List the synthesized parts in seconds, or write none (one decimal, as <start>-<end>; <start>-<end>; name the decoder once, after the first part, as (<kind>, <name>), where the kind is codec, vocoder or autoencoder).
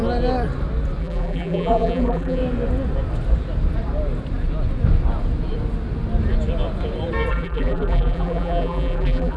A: 1.0-2.4 (vocoder, BigVGAN v2); 7.3-9.4